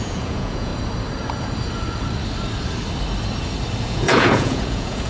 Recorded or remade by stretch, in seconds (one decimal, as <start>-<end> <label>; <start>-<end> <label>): 0.0-0.7 remade; 0.7-3.8 recorded; 3.8-5.1 remade